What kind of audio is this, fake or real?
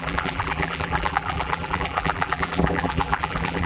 fake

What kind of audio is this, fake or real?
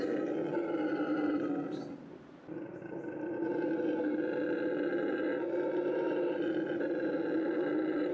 real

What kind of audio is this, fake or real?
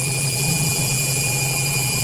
fake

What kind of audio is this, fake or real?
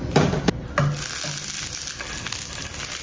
real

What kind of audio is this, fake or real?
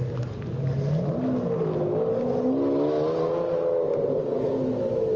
real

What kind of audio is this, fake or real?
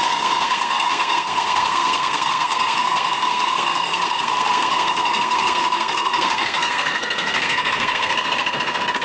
fake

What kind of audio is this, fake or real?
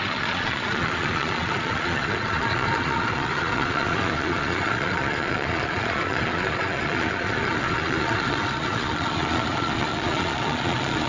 fake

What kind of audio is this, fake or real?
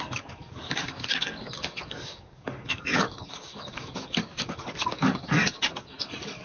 fake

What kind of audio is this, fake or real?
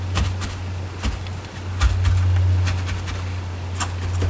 real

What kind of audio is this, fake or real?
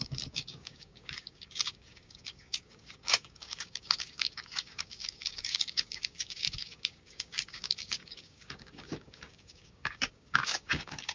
fake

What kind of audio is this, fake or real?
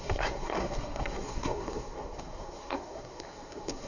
fake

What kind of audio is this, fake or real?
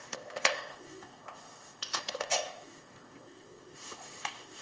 fake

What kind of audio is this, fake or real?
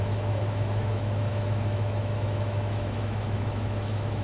fake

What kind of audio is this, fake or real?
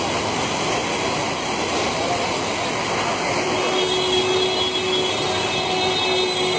real